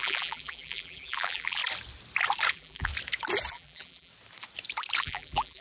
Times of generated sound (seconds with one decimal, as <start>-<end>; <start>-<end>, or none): 0.0-1.6; 2.5-2.9; 3.5-4.1; 5.0-5.6